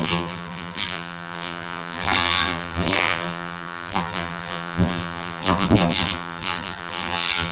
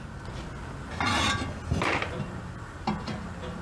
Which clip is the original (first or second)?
second